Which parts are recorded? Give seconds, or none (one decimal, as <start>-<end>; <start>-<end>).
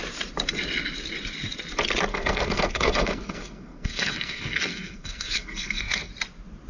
0.0-2.1; 6.1-6.7